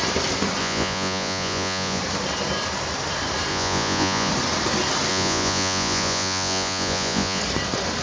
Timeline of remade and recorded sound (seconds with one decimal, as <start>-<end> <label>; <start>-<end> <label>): 0.0-0.6 recorded; 0.6-2.0 remade; 2.0-3.5 recorded; 3.5-4.3 remade; 4.3-5.1 recorded; 5.1-7.4 remade; 7.4-8.0 recorded